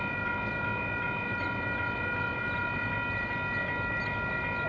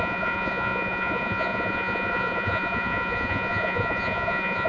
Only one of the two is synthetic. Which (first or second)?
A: second